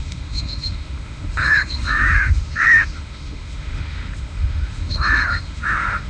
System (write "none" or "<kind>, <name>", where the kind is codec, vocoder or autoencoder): autoencoder, DAC-VAE